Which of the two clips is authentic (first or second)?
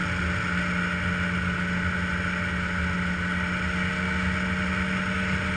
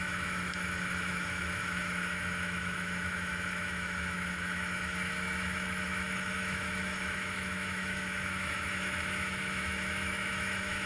first